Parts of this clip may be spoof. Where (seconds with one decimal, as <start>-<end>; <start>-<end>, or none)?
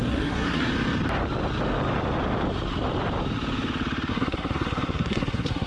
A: 0.0-0.7; 4.1-5.7